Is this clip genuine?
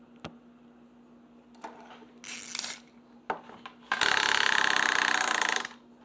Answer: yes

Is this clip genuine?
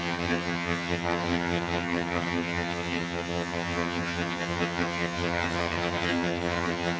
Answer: no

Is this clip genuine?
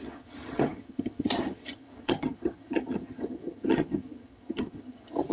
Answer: no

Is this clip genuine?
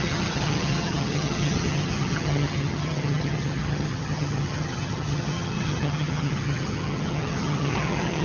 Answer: no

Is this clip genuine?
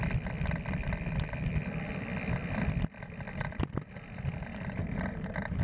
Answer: yes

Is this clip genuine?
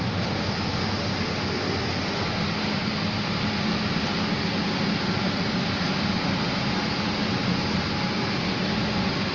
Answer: yes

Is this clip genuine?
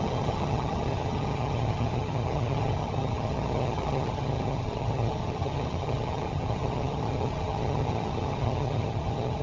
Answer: no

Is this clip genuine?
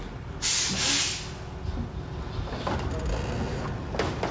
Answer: yes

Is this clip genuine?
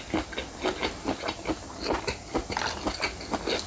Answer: yes